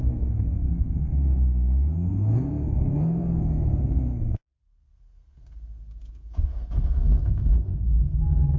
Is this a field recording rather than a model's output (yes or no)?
no